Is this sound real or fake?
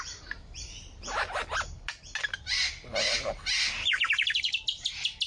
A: real